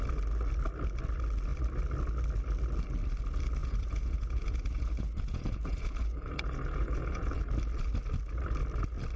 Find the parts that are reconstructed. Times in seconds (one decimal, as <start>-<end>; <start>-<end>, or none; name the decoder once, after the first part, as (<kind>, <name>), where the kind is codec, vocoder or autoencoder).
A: 3.6-7.4 (vocoder, Vocos)